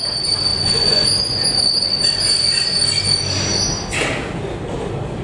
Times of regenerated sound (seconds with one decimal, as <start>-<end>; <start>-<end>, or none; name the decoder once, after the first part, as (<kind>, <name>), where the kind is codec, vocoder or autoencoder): 0.5-1.4 (vocoder, Vocos)